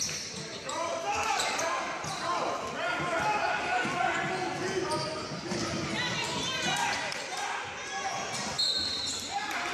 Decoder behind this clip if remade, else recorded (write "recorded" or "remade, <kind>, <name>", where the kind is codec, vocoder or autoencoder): recorded